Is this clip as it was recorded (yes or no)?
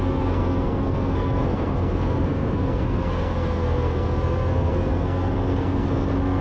no